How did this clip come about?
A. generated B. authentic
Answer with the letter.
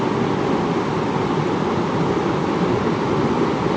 B